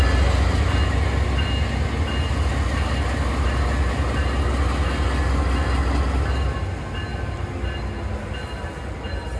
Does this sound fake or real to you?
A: real